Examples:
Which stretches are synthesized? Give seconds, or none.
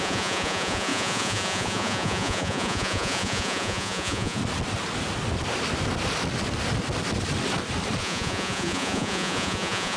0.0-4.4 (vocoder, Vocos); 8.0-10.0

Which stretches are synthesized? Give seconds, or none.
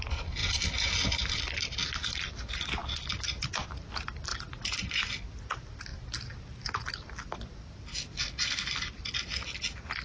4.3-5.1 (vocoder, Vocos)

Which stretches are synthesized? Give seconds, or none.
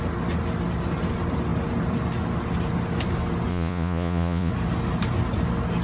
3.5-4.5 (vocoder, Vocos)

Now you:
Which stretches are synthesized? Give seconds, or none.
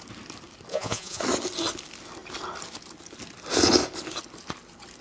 0.7-1.2 (vocoder, Vocos)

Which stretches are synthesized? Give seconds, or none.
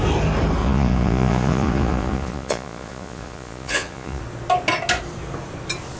0.6-4.2 (vocoder, Vocos)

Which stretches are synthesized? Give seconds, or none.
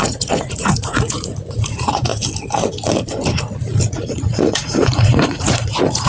0.0-2.1 (vocoder, Vocos); 3.9-6.1